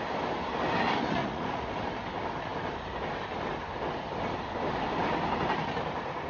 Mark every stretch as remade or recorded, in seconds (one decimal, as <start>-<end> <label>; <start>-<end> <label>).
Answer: 0.0-1.2 recorded; 1.2-1.7 remade; 1.7-6.3 recorded